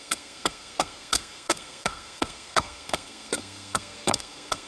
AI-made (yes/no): yes